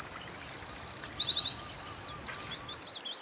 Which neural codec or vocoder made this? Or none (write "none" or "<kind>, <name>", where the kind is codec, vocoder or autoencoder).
none